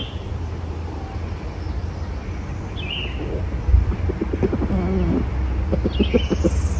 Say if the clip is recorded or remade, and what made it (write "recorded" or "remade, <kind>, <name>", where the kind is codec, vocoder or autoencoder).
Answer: recorded